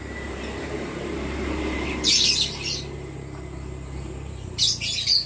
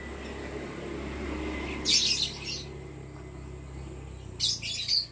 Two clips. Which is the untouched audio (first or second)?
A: second